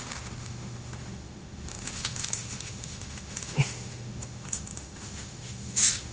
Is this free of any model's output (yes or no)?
no